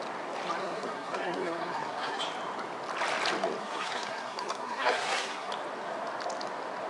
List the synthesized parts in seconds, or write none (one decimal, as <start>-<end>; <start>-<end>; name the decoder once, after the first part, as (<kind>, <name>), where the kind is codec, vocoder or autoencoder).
0.6-2.2 (codec, SNAC); 3.6-5.5